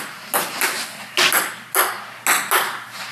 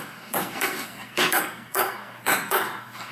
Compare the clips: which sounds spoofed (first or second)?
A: second